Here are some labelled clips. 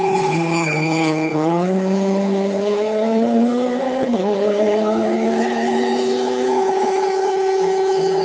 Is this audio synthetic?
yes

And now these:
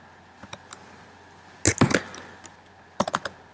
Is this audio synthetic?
no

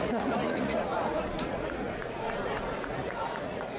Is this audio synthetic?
yes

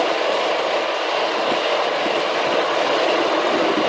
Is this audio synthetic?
no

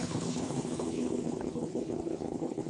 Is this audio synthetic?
yes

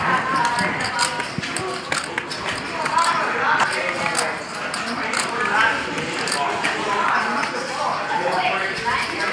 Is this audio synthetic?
no